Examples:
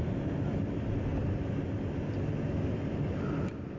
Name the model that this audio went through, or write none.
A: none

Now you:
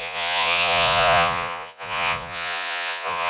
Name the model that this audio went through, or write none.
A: vocoder, Vocos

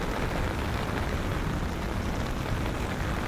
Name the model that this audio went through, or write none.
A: none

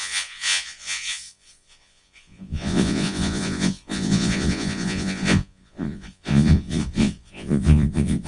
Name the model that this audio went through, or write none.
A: vocoder, Vocos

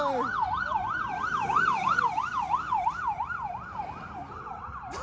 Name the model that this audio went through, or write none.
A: none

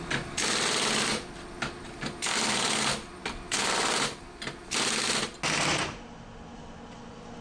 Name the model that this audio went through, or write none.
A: none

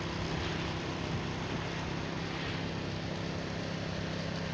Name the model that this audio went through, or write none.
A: none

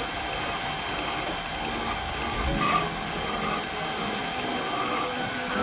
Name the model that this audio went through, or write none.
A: none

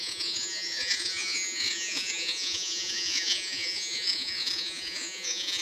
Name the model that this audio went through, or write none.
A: vocoder, Vocos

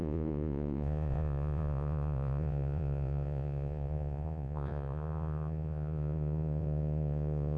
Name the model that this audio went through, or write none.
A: vocoder, Vocos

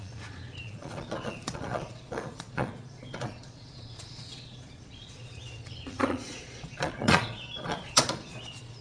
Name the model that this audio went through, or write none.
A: vocoder, Vocos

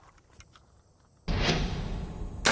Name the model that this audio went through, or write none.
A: none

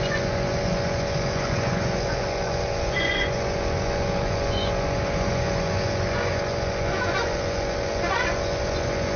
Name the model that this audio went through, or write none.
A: vocoder, Vocos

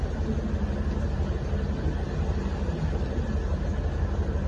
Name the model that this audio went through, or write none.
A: none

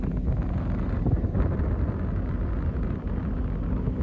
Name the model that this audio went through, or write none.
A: none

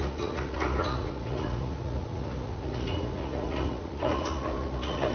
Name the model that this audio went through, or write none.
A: vocoder, Vocos